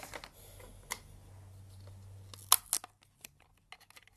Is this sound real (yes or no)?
yes